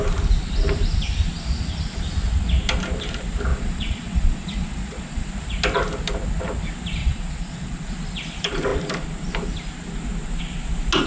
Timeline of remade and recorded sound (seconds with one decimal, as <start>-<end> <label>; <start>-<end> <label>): 0.0-3.5 recorded; 3.5-5.3 remade; 5.3-7.0 recorded; 7.0-7.9 remade; 7.9-11.1 recorded